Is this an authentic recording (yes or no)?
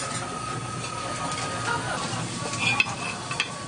yes